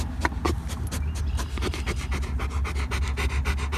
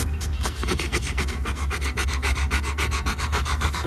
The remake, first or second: second